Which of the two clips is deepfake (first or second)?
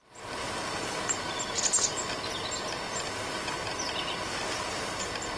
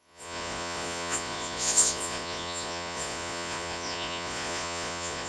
second